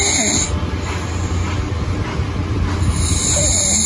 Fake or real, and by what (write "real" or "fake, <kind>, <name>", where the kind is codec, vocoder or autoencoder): real